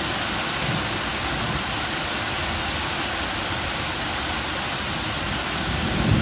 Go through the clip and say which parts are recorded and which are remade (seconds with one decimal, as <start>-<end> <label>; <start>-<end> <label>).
0.0-6.2 recorded